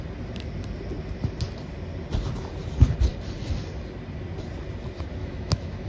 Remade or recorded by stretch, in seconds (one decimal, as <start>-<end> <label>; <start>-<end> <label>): 0.0-5.2 recorded; 5.2-5.9 remade